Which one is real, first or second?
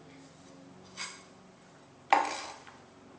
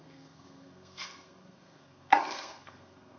first